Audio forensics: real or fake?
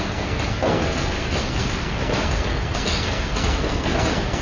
fake